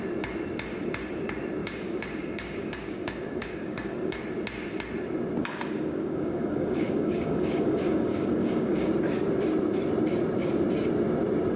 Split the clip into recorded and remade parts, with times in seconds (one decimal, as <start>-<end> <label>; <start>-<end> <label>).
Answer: 0.0-1.6 recorded; 1.6-4.2 remade; 4.2-5.4 recorded; 5.4-8.9 remade; 8.9-11.6 recorded